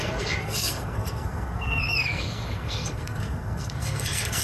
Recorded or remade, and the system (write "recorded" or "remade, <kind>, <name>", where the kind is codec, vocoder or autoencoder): remade, codec, SNAC